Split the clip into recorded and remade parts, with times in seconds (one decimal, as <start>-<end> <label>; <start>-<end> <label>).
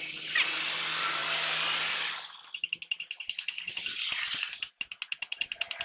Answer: 0.0-5.8 recorded